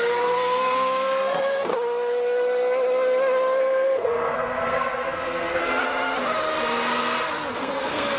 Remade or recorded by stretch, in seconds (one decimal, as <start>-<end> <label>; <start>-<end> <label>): 0.0-1.7 remade; 1.7-3.6 recorded; 3.6-5.6 remade; 5.6-7.6 recorded; 7.6-8.2 remade

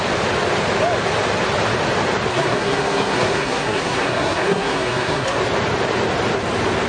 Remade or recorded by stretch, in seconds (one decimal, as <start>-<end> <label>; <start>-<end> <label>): 0.0-2.3 recorded; 2.3-5.4 remade; 5.4-6.9 recorded

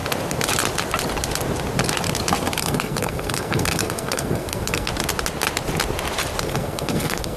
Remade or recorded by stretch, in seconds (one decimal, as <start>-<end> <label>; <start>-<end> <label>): 0.0-2.6 recorded; 2.6-4.9 remade; 4.9-6.4 recorded; 6.4-7.4 remade

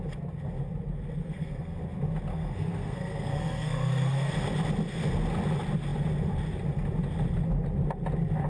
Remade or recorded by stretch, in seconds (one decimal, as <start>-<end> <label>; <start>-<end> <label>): 0.0-1.2 recorded; 1.2-1.8 remade; 1.8-2.3 recorded; 2.3-4.3 remade; 4.3-8.5 recorded

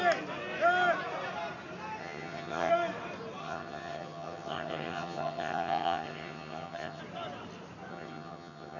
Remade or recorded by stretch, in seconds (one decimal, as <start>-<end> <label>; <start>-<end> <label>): 0.0-2.0 recorded; 2.0-2.7 remade; 2.7-3.4 recorded; 3.4-7.0 remade; 7.0-7.9 recorded; 7.9-8.8 remade

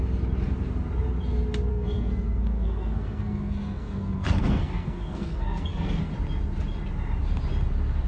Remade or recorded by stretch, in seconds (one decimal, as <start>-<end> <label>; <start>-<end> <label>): 0.0-1.7 recorded; 1.7-6.1 remade; 6.1-8.1 recorded